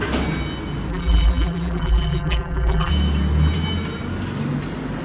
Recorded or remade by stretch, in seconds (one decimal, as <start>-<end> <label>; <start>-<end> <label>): 0.0-0.9 recorded; 0.9-2.9 remade; 2.9-5.0 recorded